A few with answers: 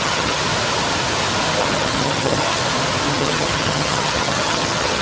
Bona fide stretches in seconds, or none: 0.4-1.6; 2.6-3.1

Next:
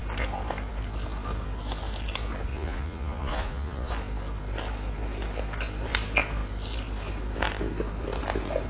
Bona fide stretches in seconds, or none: 0.0-2.5; 3.9-8.7

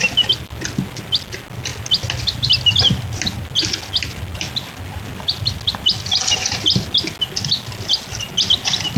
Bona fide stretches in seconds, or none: 0.0-9.0

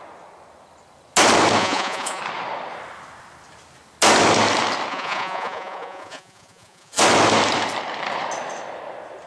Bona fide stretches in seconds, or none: 0.0-1.6; 2.2-4.9; 7.0-9.3

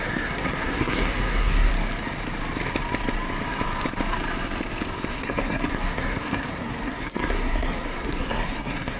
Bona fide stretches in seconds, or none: 1.7-5.1

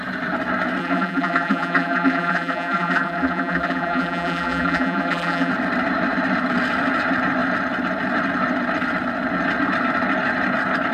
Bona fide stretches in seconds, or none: 0.0-0.8; 5.5-10.9

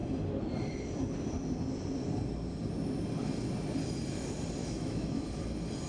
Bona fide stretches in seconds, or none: 0.0-4.6; 5.3-5.9

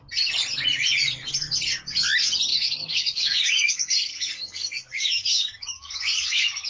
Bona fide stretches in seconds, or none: 0.0-2.5